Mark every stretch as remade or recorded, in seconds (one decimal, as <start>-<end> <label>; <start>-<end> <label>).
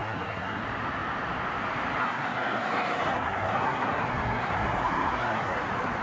0.0-0.6 remade; 0.6-2.0 recorded; 2.0-5.6 remade; 5.6-6.0 recorded